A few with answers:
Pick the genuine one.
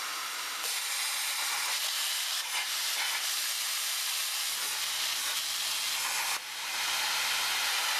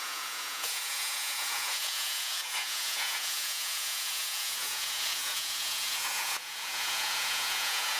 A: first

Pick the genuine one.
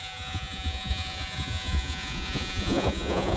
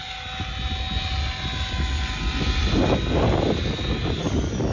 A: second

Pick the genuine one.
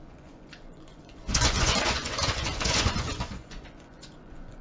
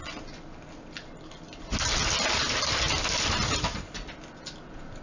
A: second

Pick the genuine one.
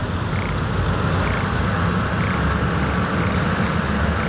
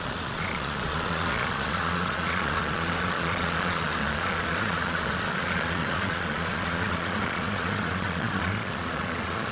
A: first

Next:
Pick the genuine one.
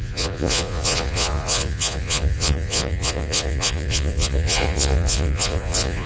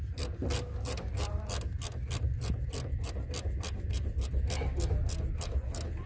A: second